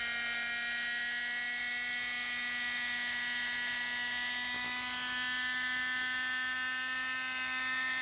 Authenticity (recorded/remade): recorded